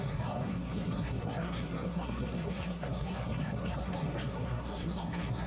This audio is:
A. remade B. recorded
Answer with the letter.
A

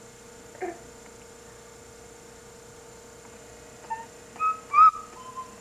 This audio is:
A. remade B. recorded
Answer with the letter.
B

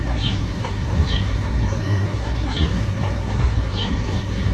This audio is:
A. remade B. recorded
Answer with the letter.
A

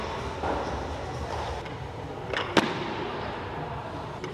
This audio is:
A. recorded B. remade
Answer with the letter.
A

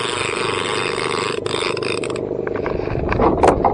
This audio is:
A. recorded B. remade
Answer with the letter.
A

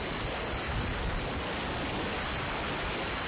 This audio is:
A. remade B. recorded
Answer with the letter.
B